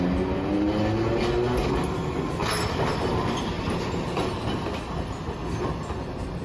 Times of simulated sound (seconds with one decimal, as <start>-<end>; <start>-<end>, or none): none